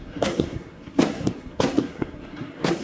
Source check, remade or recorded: remade